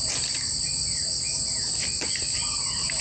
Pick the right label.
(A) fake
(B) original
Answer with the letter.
B